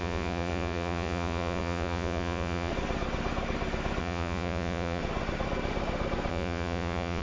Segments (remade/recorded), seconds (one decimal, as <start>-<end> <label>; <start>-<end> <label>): 0.0-2.7 remade; 2.7-4.0 recorded; 4.0-5.0 remade; 5.0-6.3 recorded; 6.3-7.2 remade